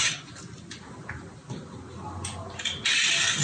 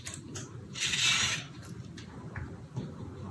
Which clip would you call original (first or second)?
first